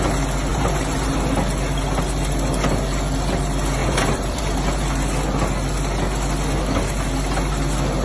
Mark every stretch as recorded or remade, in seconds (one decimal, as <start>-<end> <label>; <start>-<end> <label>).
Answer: 0.0-0.5 recorded; 0.5-1.3 remade; 1.3-3.8 recorded; 3.8-4.4 remade; 4.4-8.0 recorded